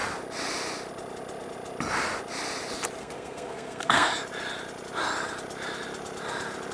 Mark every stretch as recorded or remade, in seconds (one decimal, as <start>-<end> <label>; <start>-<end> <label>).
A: 0.0-3.0 recorded; 3.0-4.1 remade; 4.1-6.7 recorded